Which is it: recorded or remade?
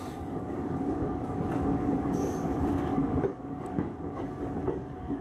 remade